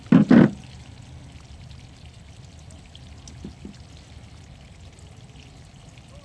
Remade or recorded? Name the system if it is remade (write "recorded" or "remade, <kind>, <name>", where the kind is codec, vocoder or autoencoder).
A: recorded